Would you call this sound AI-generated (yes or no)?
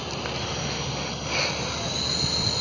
no